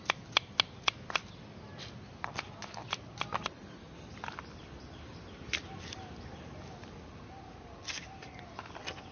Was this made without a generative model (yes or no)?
yes